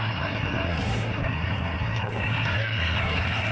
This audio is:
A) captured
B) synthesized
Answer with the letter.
B